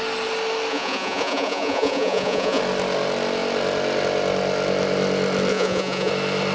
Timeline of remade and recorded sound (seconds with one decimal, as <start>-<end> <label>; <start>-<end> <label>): 0.0-0.7 recorded; 0.7-2.6 remade; 2.6-5.5 recorded; 5.5-6.1 remade; 6.1-6.5 recorded